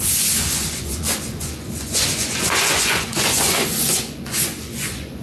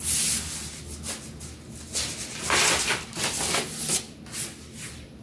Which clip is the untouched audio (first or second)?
second